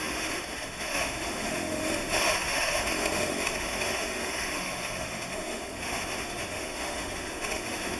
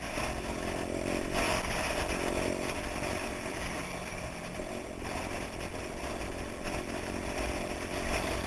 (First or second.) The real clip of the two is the second